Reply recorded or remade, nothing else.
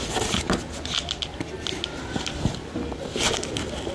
recorded